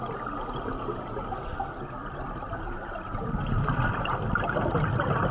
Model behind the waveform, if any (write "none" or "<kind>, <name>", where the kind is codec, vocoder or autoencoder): none